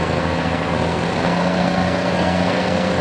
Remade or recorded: remade